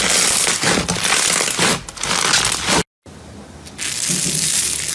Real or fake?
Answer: real